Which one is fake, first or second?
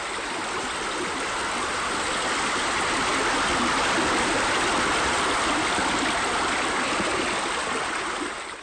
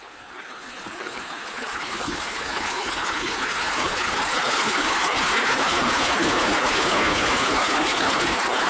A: second